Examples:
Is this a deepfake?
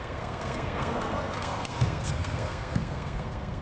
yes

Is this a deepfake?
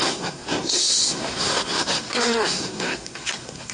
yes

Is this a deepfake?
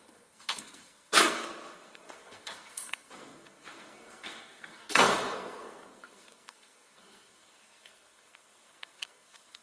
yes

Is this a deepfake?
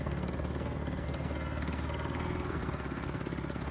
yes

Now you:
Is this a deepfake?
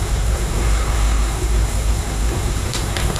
yes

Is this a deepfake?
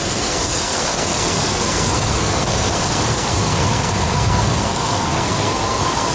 yes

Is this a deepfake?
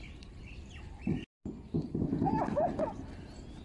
no